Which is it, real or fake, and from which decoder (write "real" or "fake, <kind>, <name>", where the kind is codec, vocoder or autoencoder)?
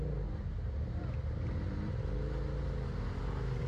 real